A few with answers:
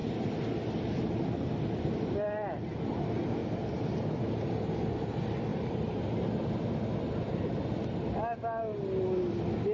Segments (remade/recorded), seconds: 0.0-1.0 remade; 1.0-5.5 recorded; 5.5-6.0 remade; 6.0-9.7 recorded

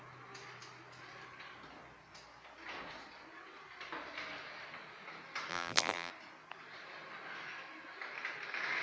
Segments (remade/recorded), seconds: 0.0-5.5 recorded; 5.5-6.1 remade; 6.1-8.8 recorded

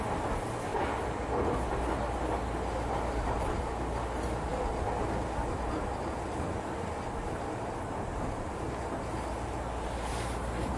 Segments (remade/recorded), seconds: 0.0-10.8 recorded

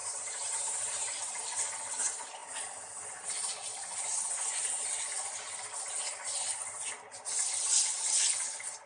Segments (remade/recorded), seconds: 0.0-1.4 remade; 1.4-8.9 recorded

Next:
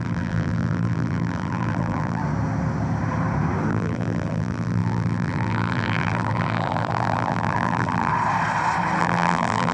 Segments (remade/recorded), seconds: 0.0-2.2 remade; 2.2-3.7 recorded; 3.7-8.1 remade; 8.1-9.0 recorded; 9.0-9.7 remade

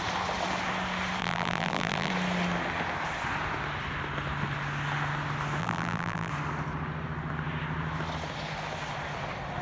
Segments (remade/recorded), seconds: 0.0-1.2 recorded; 1.2-2.1 remade; 2.1-5.6 recorded; 5.6-6.3 remade; 6.3-9.6 recorded

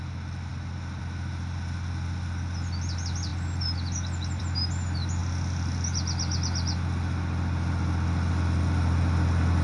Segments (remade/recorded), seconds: 0.0-9.6 recorded